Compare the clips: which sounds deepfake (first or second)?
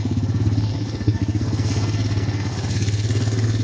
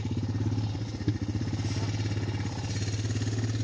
first